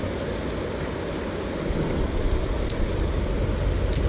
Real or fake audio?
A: real